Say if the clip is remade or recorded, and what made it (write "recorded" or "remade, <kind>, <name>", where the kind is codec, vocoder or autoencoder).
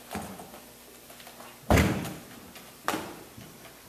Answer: recorded